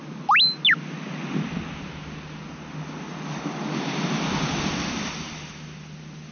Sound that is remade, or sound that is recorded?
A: recorded